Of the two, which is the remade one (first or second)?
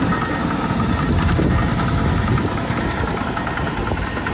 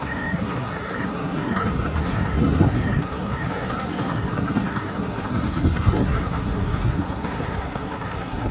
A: second